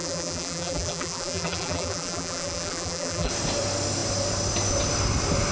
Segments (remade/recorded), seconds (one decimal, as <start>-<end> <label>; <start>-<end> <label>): 0.0-3.3 remade; 3.3-5.5 recorded